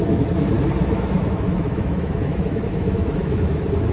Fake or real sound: fake